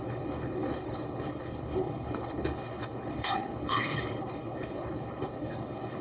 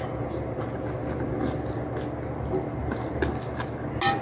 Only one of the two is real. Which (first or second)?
second